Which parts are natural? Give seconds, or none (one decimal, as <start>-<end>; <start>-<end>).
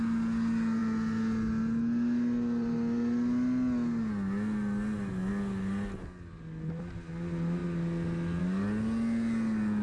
0.0-9.8